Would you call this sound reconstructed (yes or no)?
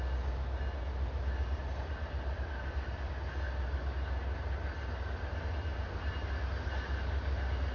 no